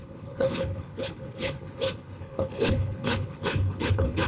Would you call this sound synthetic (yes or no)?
yes